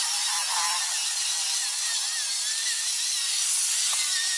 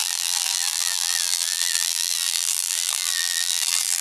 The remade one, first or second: second